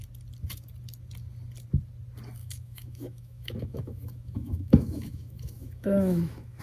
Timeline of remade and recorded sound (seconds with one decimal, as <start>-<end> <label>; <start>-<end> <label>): 0.0-2.4 recorded; 2.4-6.6 remade